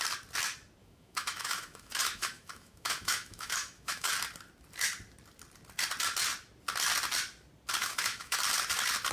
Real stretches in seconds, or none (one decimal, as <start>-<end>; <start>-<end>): 0.0-0.8; 4.1-7.8; 8.4-9.1